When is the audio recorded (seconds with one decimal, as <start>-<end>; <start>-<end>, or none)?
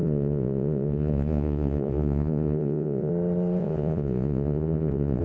3.1-3.6